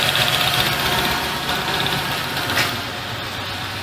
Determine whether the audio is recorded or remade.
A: recorded